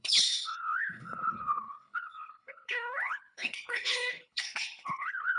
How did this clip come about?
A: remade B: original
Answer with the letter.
A